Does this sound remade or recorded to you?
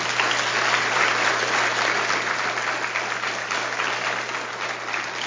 recorded